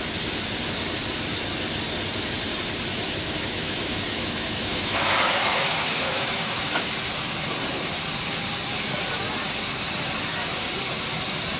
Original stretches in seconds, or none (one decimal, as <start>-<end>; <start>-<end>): 0.0-2.9; 6.9-11.6